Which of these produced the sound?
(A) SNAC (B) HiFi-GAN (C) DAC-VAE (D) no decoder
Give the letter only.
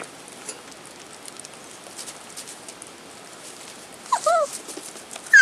D